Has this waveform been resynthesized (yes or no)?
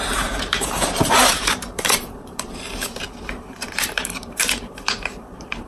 yes